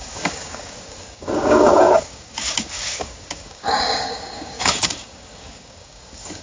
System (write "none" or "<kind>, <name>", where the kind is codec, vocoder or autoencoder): codec, DAC